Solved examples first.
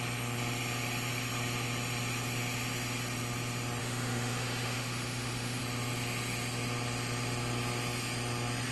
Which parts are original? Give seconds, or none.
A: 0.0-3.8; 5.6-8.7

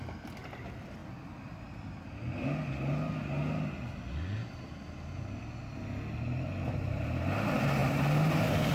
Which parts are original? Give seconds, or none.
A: 0.0-8.7

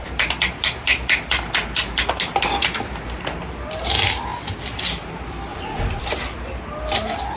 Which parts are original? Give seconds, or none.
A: 0.0-5.5; 6.0-7.4